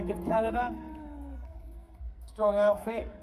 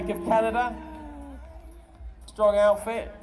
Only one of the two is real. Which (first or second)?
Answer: second